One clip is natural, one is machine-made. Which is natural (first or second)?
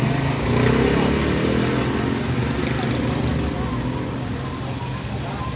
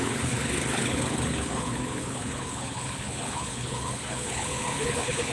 first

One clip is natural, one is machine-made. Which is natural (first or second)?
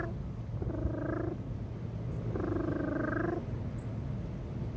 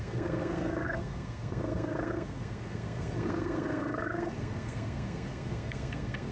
first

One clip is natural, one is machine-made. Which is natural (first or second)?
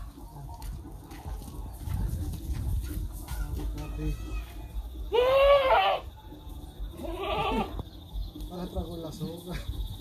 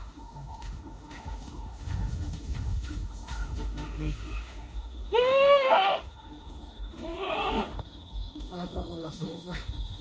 first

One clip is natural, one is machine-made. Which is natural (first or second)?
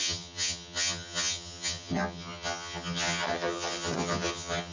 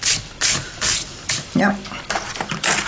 second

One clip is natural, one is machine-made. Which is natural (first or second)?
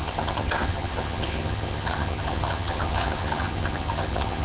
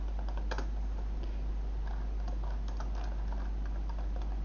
second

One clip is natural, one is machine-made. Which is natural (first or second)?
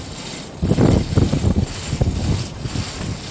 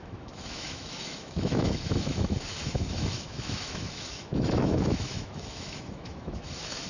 first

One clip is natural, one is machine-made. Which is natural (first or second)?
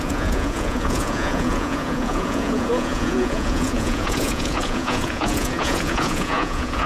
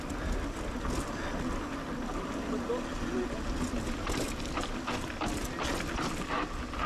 second